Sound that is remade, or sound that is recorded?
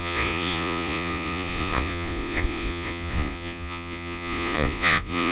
remade